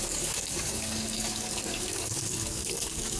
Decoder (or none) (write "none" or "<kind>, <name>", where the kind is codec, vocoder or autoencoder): codec, DAC